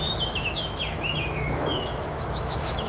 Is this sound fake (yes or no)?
yes